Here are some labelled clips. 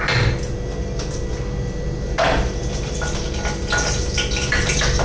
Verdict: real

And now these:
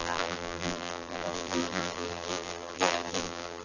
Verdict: fake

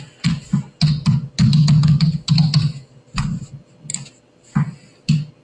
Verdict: real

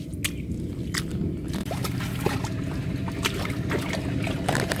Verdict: real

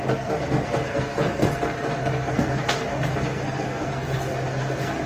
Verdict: fake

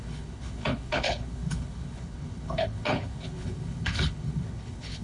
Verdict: fake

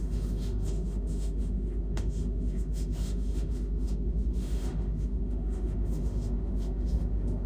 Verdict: fake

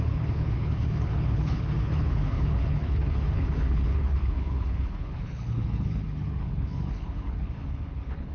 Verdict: fake